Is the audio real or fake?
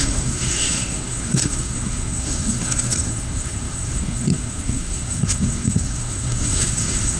fake